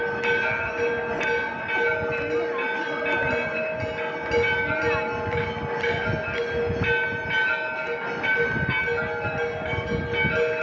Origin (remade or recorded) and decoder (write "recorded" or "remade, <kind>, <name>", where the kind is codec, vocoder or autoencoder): recorded